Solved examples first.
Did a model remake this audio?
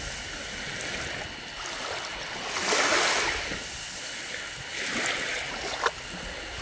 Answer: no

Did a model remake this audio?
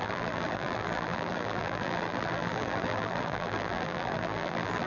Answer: yes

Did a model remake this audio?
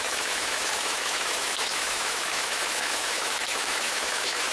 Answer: yes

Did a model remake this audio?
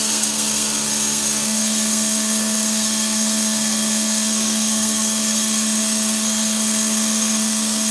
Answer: yes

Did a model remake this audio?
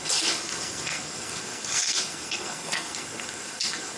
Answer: yes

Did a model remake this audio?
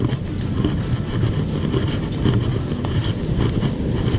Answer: no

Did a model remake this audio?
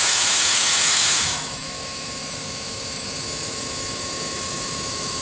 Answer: yes